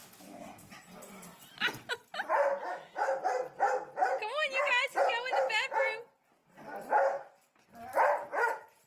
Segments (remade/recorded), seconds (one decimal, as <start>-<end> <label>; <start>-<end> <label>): 0.0-0.7 remade; 0.7-2.7 recorded; 2.7-3.2 remade; 3.2-8.9 recorded